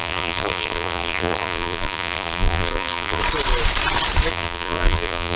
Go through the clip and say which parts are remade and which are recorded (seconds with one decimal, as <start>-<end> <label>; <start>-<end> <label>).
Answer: 0.0-3.2 remade; 3.2-4.3 recorded; 4.3-5.4 remade

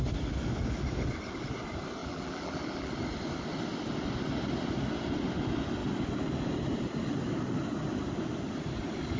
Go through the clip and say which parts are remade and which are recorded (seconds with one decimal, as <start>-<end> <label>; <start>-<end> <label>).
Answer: 0.0-2.0 recorded; 2.0-2.9 remade; 2.9-9.2 recorded

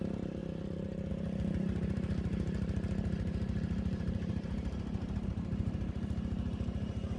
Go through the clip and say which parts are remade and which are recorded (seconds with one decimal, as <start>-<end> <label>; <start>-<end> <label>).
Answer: 0.0-0.4 remade; 0.4-1.1 recorded; 1.1-2.3 remade; 2.3-3.0 recorded; 3.0-7.2 remade

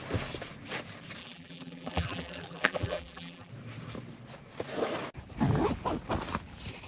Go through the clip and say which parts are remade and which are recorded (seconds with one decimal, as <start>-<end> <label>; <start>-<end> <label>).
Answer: 0.0-1.2 recorded; 1.2-3.5 remade; 3.5-6.9 recorded

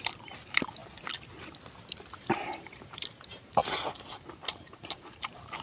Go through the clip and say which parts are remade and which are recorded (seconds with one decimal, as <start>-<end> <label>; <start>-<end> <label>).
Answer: 0.0-0.8 remade; 0.8-2.2 recorded; 2.2-5.6 remade

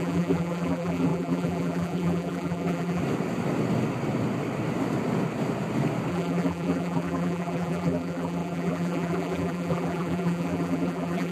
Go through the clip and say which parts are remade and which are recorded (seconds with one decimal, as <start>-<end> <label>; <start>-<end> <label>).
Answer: 0.0-3.0 remade; 3.0-6.1 recorded; 6.1-11.3 remade